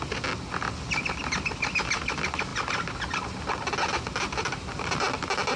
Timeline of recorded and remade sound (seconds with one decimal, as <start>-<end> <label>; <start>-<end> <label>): 0.0-5.6 recorded